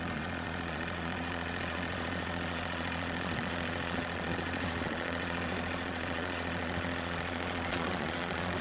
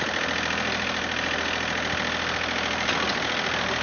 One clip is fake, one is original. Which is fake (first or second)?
first